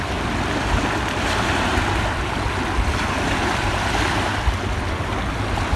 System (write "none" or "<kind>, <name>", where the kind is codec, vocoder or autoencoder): none